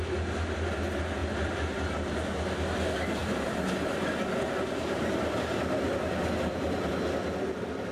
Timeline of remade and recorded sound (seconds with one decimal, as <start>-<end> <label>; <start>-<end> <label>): 0.0-1.2 recorded; 1.2-1.9 remade; 1.9-3.2 recorded; 3.2-6.9 remade; 6.9-7.9 recorded